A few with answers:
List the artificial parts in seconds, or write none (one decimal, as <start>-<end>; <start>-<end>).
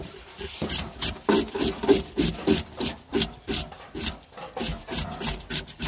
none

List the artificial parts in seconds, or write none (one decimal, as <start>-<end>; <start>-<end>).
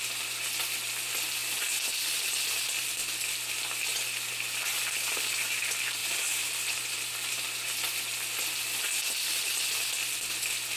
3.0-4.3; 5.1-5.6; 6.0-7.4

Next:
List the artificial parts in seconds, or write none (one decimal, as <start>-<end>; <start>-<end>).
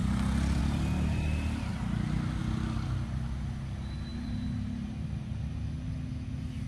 4.1-5.6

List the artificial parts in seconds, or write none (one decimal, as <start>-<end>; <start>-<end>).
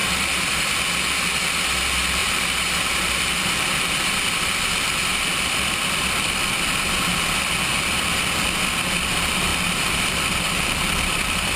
0.0-0.6; 2.2-4.5; 9.5-11.6